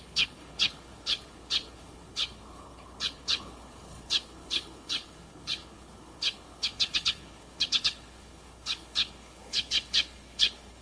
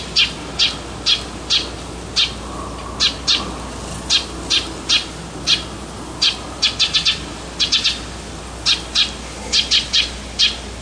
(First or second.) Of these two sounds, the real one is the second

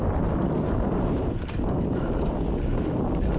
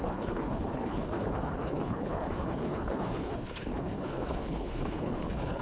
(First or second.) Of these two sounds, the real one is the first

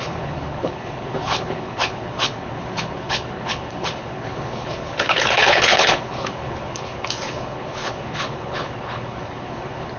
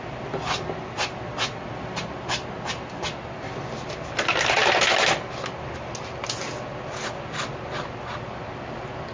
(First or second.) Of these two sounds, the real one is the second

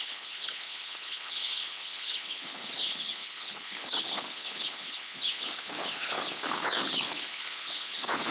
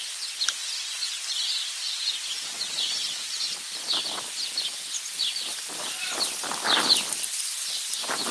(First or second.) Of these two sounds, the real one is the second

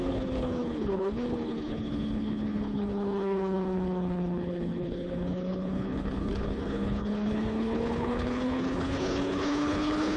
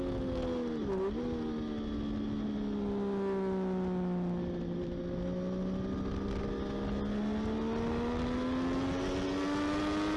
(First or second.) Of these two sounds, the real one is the second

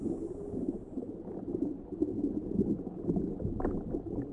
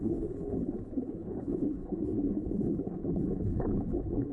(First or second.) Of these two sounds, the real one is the first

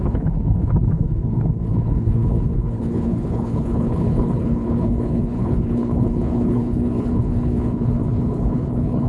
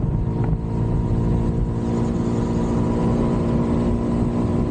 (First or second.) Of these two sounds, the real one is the second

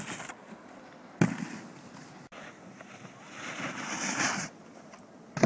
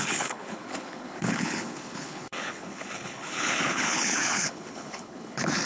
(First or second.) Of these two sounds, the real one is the first